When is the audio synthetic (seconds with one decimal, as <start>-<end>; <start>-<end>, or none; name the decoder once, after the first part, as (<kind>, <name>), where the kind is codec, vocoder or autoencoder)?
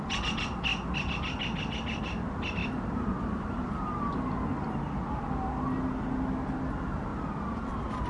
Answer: 2.6-4.0 (vocoder, BigVGAN v2); 7.1-8.1